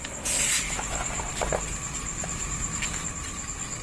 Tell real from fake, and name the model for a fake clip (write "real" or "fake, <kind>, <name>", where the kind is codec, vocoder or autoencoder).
real